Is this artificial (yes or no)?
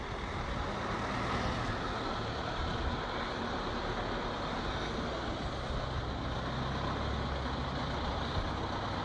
no